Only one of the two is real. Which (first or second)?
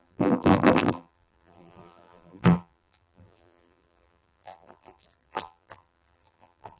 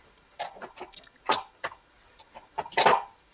second